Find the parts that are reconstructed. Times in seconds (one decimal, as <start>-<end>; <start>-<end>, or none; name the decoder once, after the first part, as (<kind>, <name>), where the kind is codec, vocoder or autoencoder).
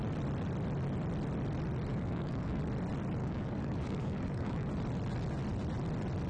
1.9-2.6 (codec, DAC); 3.2-4.7